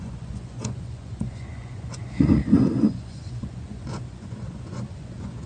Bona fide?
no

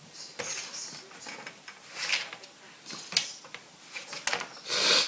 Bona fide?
yes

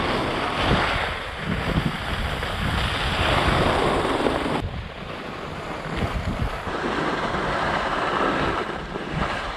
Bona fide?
yes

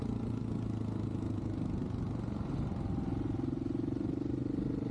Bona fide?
yes